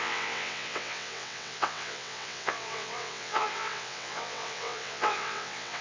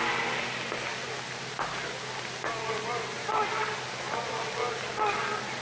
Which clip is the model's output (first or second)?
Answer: first